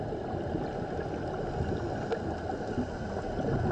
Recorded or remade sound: recorded